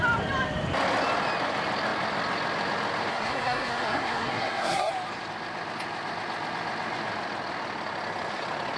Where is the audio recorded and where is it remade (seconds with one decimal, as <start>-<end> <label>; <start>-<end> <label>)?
0.0-3.1 recorded; 3.1-4.9 remade; 4.9-8.8 recorded